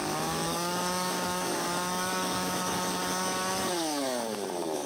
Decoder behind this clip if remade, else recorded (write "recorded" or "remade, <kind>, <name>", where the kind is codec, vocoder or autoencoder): remade, codec, DAC